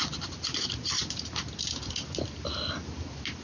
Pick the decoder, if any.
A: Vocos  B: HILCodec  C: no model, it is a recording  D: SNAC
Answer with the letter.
C